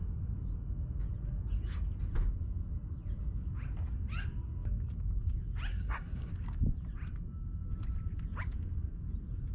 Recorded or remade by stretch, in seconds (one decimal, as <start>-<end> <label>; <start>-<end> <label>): 0.0-5.7 recorded; 5.7-6.3 remade; 6.3-9.5 recorded